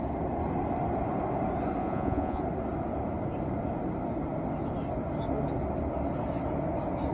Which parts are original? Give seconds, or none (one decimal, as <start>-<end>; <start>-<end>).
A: 0.0-1.8; 2.4-7.1